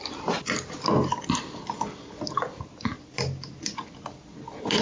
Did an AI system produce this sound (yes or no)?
no